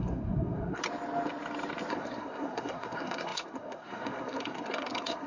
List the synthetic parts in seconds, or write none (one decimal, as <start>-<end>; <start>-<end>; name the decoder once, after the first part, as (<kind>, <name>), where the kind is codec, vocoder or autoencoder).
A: 0.0-0.8 (codec, SNAC); 1.9-5.3